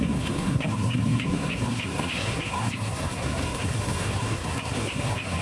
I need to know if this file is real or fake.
fake